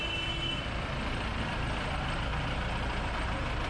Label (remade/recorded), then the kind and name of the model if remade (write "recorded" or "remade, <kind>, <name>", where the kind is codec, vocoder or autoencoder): recorded